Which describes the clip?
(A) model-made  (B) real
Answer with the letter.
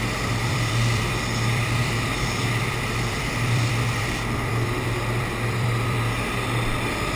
A